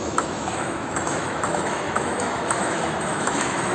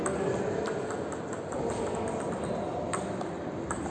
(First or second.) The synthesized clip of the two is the first